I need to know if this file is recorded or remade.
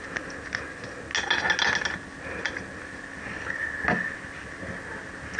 recorded